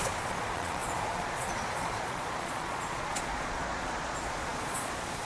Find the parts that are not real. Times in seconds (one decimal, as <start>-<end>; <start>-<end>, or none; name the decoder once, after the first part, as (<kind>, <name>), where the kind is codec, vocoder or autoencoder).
0.0-5.2 (vocoder, Vocos)